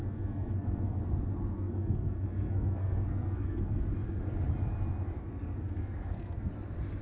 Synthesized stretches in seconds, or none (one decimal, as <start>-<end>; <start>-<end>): 0.0-1.0; 1.5-3.9; 5.2-6.5